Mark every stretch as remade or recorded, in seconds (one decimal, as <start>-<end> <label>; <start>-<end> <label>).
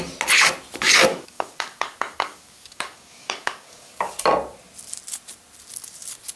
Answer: 0.0-1.1 recorded; 1.1-4.1 remade; 4.1-6.4 recorded